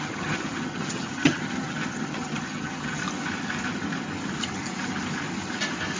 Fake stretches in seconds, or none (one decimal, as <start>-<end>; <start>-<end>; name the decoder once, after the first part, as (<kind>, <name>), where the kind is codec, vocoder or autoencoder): 0.0-3.0 (vocoder, HiFi-GAN)